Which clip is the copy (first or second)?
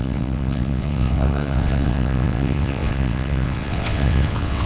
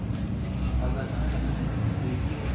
first